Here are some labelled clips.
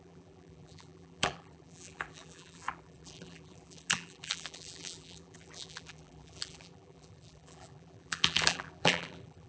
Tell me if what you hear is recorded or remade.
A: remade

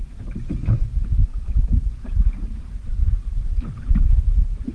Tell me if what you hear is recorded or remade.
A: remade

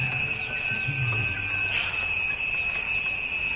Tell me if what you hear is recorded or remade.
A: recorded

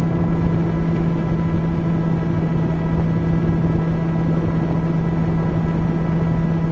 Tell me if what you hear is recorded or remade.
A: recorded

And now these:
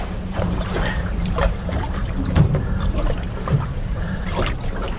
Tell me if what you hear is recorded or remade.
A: remade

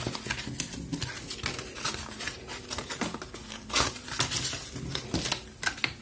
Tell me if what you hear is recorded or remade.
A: recorded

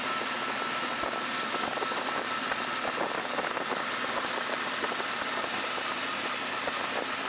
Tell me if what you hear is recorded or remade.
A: recorded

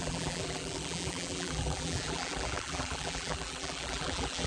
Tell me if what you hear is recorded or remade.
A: remade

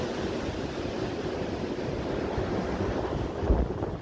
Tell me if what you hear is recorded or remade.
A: recorded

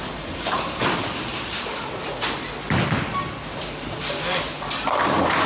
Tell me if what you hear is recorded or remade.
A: recorded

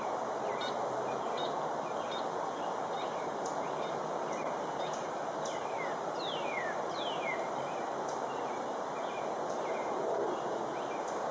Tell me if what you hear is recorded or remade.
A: remade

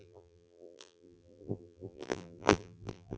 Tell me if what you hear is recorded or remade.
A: remade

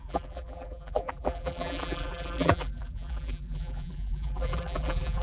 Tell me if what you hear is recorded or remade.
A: remade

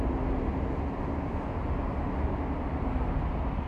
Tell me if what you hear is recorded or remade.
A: recorded